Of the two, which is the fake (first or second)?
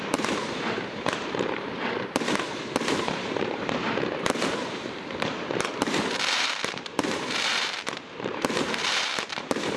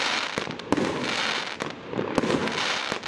first